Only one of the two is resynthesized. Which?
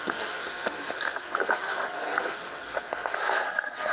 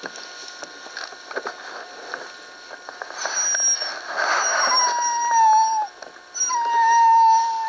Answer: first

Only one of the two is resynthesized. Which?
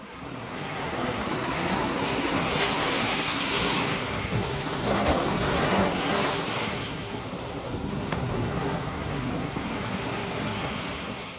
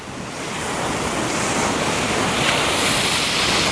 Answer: first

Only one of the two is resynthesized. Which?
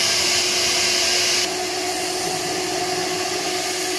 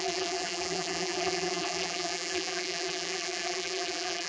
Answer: second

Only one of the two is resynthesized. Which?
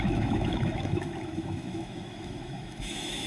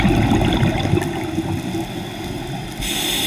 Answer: first